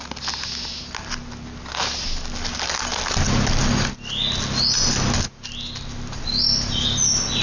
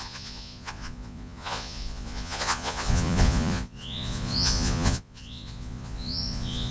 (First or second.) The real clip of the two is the first